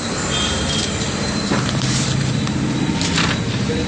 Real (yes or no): no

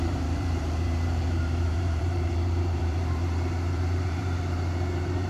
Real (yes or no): no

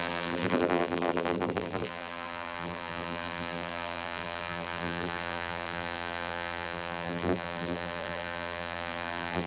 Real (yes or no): no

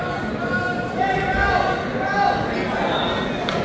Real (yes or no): yes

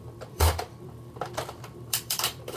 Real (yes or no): no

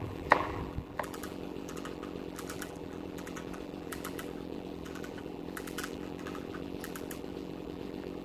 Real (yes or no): no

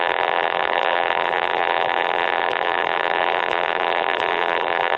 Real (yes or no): no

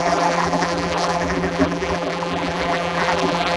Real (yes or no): no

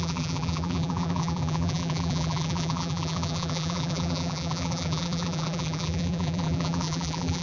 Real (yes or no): no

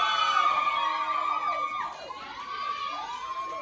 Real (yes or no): no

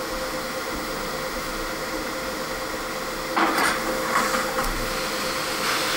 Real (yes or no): yes